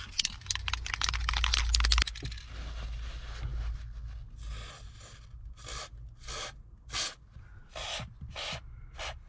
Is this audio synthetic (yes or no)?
no